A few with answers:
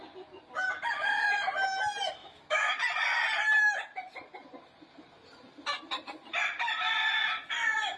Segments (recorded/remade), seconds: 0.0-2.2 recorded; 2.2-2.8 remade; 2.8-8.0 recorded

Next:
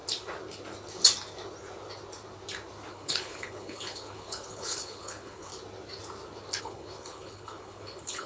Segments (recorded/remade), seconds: 0.0-2.9 recorded; 2.9-5.5 remade; 5.5-6.6 recorded; 6.6-8.3 remade